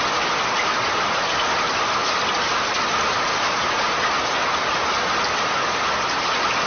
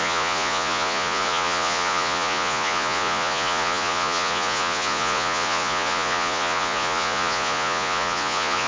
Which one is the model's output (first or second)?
second